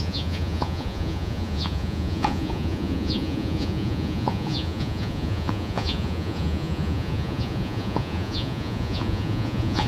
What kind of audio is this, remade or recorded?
remade